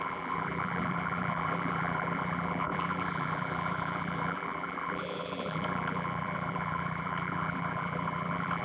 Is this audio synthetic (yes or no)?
yes